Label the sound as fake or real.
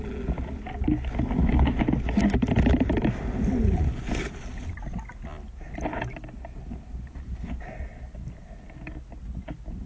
real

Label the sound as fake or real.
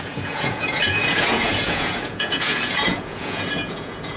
fake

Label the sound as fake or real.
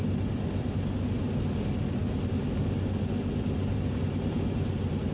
real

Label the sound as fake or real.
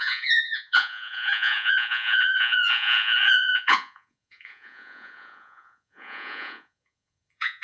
fake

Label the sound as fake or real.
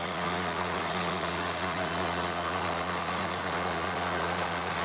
fake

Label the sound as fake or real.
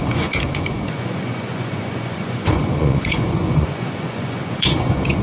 fake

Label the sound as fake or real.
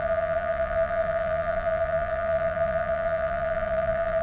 fake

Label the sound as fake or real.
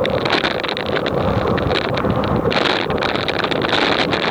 real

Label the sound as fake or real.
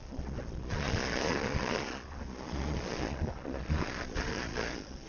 fake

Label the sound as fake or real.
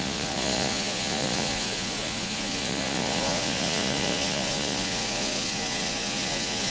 fake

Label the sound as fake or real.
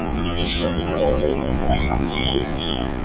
fake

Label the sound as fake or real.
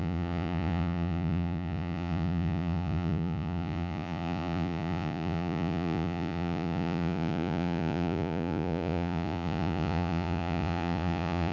fake